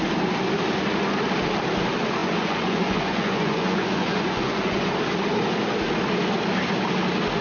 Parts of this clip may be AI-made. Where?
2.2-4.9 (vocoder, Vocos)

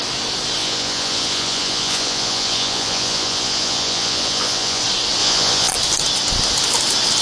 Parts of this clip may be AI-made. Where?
0.6-4.8 (vocoder, Vocos); 5.2-5.7

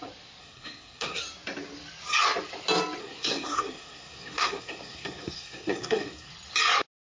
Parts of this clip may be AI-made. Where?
0.4-1.2 (codec, SNAC); 3.0-6.3

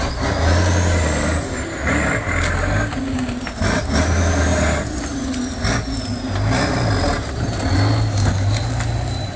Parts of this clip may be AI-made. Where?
none

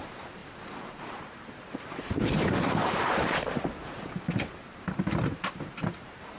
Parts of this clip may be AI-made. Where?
0.0-6.4 (vocoder, BigVGAN v2)

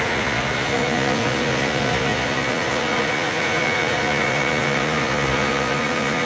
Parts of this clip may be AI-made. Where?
0.0-6.3 (vocoder, Vocos)